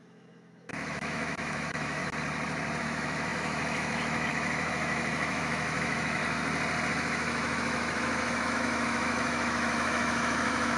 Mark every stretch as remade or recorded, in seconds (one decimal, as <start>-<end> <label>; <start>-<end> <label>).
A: 0.0-2.0 remade; 2.0-2.8 recorded; 2.8-6.2 remade; 6.2-6.9 recorded; 6.9-10.8 remade